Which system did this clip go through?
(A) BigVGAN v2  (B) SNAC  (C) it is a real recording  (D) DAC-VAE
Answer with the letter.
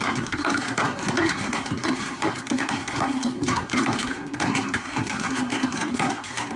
B